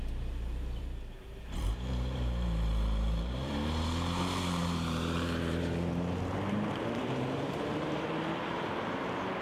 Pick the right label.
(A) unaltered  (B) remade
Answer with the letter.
B